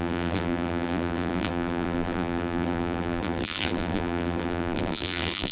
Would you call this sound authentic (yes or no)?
no